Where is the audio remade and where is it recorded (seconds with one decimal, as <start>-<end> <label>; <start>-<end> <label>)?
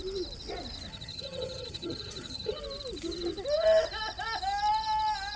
0.0-0.9 recorded; 0.9-2.6 remade; 2.6-5.4 recorded